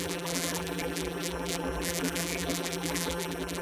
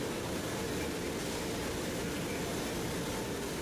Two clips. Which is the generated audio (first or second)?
first